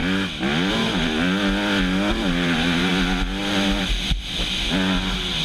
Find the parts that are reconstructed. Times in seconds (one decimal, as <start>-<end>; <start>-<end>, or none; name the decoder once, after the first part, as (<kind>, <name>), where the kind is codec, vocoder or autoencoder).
2.1-2.9 (vocoder, BigVGAN v2); 3.4-4.2